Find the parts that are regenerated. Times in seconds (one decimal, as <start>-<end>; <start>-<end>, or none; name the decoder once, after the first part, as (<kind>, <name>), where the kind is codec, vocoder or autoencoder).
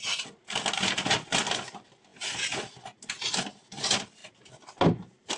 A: none